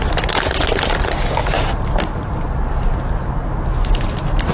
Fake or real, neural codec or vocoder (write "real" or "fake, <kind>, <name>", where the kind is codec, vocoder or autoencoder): real